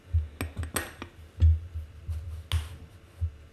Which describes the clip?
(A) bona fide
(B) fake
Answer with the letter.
A